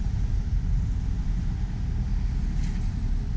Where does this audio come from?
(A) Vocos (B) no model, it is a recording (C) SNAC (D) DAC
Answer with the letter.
B